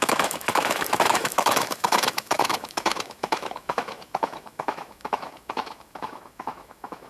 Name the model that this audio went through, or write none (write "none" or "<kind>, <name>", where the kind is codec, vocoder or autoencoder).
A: autoencoder, DAC-VAE